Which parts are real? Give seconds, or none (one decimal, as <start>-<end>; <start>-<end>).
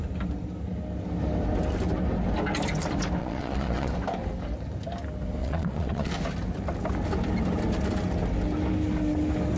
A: 0.0-3.2; 3.9-5.4; 6.1-9.6